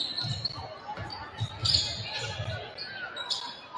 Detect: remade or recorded recorded